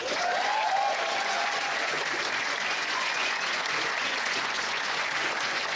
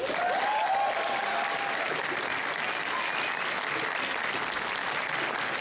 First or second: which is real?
second